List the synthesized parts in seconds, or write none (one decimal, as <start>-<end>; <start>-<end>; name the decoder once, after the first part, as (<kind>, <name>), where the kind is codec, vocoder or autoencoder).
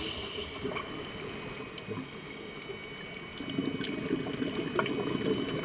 none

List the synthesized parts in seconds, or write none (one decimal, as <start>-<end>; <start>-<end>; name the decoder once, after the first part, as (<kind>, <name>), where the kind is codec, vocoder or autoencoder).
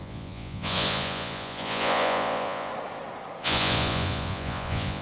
0.0-2.7 (vocoder, Vocos); 3.4-5.0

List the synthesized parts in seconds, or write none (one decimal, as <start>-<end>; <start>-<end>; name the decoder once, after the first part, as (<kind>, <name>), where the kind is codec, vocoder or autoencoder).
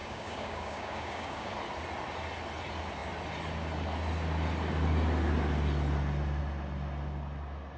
0.0-1.5 (codec, DAC)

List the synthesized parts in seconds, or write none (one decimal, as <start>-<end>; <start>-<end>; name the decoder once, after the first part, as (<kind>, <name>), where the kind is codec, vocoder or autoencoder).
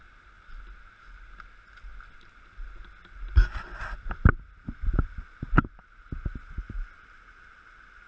none